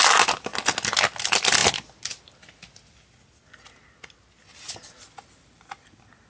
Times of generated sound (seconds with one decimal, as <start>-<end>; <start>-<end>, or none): none